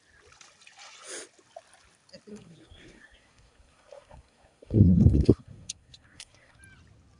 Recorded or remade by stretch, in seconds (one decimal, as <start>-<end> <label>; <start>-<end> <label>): 0.0-2.3 recorded; 2.3-6.6 remade; 6.6-7.2 recorded